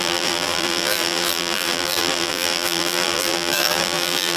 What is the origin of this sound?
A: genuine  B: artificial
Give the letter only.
B